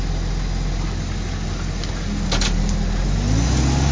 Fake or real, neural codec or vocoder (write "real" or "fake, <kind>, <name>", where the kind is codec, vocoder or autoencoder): real